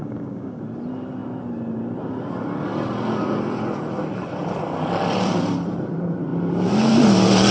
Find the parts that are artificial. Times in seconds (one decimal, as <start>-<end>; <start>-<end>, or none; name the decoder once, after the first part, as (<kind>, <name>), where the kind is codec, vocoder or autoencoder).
0.0-0.6 (codec, DAC)